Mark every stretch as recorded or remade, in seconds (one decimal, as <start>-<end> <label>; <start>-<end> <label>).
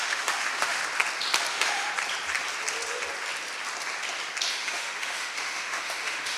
0.0-0.8 remade; 0.8-1.5 recorded; 1.5-1.9 remade; 1.9-4.5 recorded; 4.5-6.4 remade